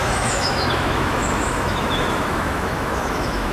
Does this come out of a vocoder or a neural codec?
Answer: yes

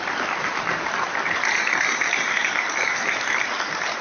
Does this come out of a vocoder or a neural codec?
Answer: no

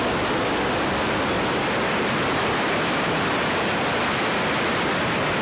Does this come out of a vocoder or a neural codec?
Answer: no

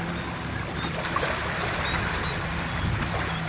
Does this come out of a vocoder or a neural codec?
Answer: no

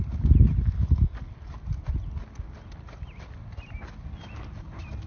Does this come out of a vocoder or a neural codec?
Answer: no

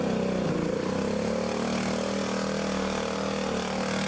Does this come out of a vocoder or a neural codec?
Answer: no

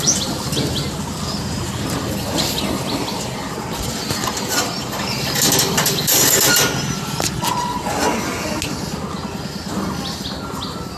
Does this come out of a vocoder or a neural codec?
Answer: no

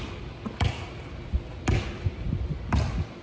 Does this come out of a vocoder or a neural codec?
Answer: no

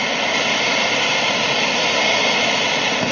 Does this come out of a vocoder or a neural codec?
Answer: no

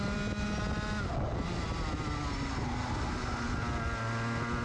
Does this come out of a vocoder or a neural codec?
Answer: no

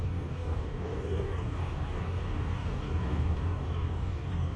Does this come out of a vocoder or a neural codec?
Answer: yes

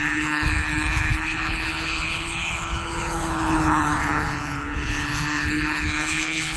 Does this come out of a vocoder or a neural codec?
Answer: yes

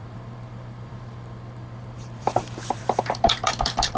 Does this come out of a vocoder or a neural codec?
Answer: yes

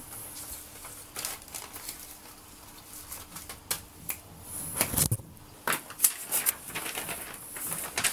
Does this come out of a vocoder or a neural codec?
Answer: no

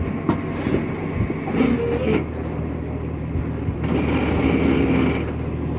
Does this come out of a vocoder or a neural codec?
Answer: no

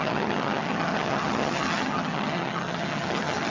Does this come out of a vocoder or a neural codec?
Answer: yes